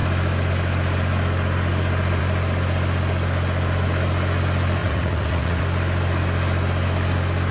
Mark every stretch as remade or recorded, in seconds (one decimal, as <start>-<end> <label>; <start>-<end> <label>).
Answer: 0.0-4.8 recorded; 4.8-5.6 remade; 5.6-7.5 recorded